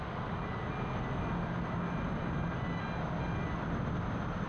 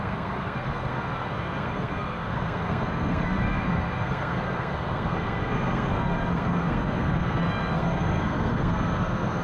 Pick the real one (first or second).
first